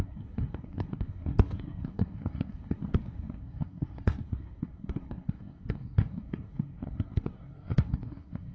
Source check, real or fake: fake